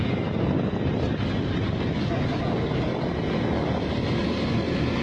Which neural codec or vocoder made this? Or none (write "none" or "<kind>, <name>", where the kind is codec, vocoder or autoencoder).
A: none